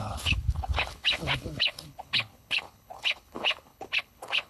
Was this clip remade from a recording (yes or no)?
yes